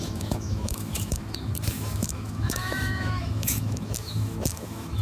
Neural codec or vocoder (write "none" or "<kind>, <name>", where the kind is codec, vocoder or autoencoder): autoencoder, DAC-VAE